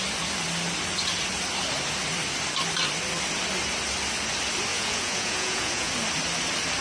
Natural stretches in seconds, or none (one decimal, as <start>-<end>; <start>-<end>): 0.0-4.7; 5.9-6.8